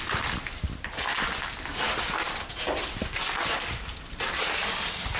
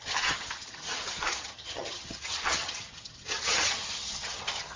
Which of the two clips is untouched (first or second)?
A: first